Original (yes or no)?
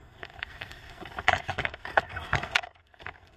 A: no